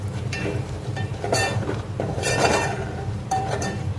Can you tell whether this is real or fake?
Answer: fake